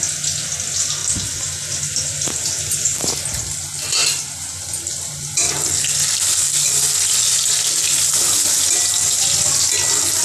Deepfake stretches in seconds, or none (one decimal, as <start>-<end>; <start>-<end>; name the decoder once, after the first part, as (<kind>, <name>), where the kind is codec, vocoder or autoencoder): 4.0-5.3 (vocoder, BigVGAN v2)